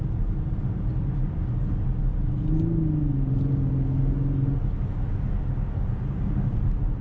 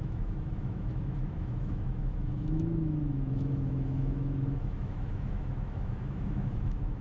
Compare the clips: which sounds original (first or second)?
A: first